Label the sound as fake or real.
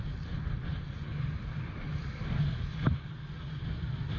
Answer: real